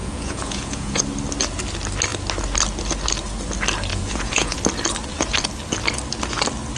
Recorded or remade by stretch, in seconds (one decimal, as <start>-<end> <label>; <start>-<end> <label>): 0.0-1.0 remade; 1.0-3.9 recorded; 3.9-4.6 remade; 4.6-6.8 recorded